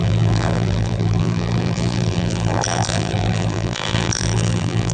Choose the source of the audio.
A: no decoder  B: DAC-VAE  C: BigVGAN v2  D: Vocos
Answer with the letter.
C